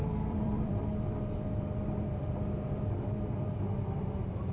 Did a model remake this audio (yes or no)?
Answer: yes